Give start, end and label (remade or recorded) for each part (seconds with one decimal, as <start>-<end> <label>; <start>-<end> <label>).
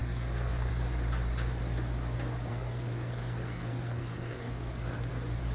0.0-0.7 remade; 0.7-2.5 recorded; 2.5-5.1 remade; 5.1-5.5 recorded